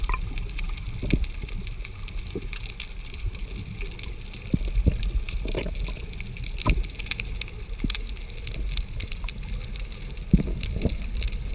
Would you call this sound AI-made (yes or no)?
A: no